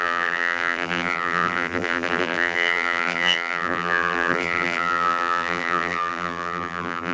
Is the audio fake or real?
fake